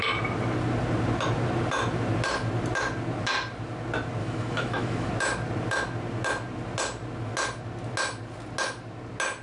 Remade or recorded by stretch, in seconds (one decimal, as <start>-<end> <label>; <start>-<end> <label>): 0.0-4.2 recorded; 4.2-5.1 remade; 5.1-9.4 recorded